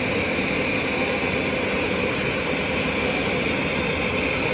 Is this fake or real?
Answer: real